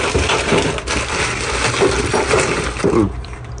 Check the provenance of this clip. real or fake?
real